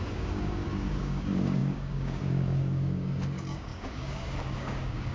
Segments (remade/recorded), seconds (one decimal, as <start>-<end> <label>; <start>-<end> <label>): 0.0-5.1 remade